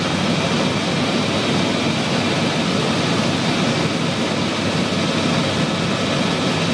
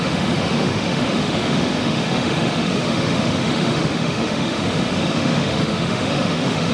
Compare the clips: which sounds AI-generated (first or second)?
second